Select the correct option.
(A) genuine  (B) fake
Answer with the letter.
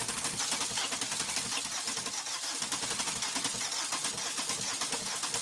A